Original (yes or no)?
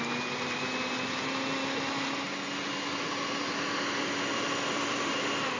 yes